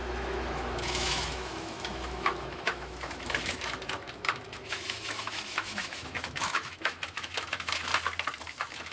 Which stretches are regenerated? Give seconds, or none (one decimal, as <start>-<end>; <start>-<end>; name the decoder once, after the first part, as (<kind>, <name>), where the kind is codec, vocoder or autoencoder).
0.0-7.9 (autoencoder, DAC-VAE); 8.4-8.9